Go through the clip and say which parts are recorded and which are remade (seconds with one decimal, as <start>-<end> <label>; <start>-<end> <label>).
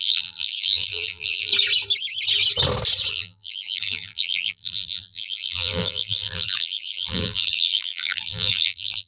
0.0-1.5 remade; 1.5-3.1 recorded; 3.1-9.1 remade